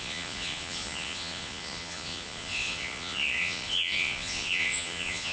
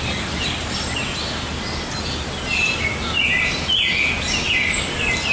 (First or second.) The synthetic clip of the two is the first